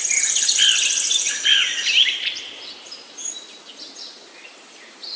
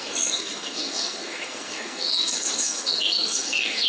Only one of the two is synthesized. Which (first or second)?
second